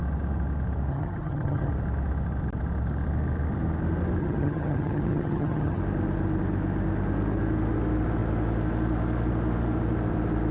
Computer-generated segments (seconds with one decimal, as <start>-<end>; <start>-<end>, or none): 0.9-1.7; 4.2-5.8